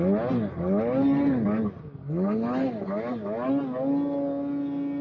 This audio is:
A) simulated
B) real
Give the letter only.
B